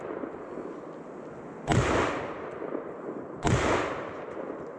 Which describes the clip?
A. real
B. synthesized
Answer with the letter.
A